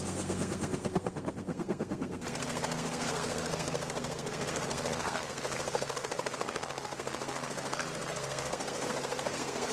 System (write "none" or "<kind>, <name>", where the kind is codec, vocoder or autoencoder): codec, SNAC